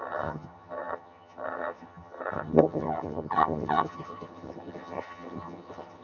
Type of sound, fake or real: fake